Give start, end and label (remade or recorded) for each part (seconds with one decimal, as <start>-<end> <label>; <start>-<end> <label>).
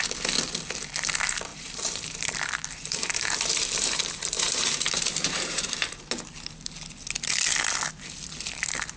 0.0-1.5 recorded; 1.5-6.0 remade; 6.0-9.0 recorded